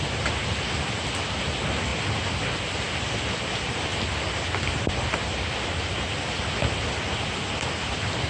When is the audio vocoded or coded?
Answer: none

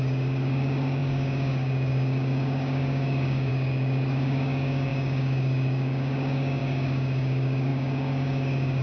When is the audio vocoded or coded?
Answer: 0.0-8.8 (codec, DAC)

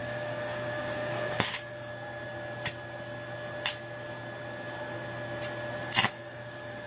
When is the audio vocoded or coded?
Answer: 0.0-1.9 (codec, DAC); 6.0-6.9

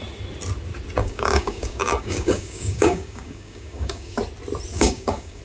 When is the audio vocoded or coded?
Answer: 1.0-4.2 (codec, DAC); 4.7-5.4

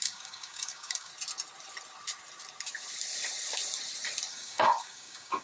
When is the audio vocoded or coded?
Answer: 0.0-1.1 (codec, DAC); 4.3-5.4

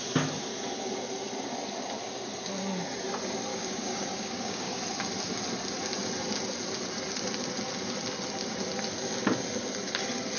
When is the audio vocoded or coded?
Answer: 3.5-4.8 (codec, DAC)